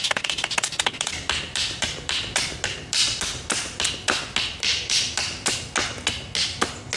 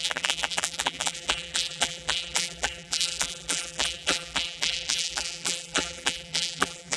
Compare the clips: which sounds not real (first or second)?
second